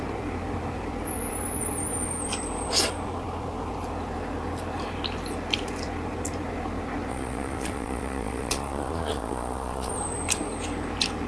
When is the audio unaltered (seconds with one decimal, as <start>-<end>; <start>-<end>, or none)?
0.0-7.1; 9.9-11.3